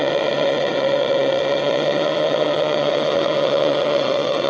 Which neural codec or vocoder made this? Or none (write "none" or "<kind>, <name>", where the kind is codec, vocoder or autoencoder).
vocoder, WaveNeXt